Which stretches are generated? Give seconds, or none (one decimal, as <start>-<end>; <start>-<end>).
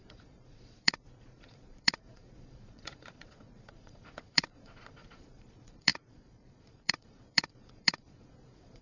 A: 0.0-8.8